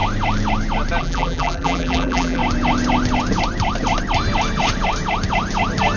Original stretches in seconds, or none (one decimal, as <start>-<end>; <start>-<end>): 0.0-1.0; 2.4-6.0